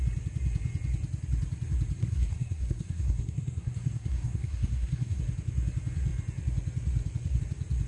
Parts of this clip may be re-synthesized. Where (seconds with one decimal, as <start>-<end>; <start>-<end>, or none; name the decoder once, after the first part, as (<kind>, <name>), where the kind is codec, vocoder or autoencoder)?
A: 2.0-5.2 (codec, SNAC)